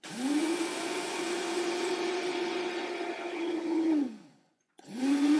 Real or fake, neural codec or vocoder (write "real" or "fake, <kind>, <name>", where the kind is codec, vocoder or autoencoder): fake, vocoder, Vocos